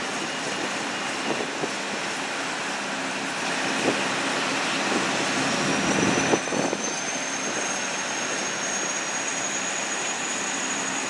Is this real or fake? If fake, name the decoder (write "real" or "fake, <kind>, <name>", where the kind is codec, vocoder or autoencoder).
real